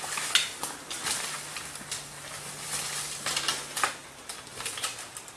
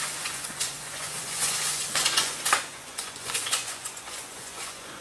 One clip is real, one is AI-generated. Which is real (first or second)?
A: first